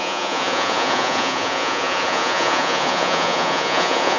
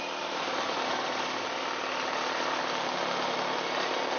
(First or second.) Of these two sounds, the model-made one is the first